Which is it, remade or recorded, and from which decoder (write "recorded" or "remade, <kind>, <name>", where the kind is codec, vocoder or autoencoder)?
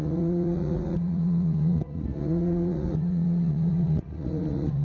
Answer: remade, vocoder, Vocos